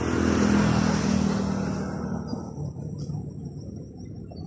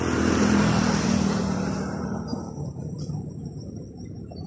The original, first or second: first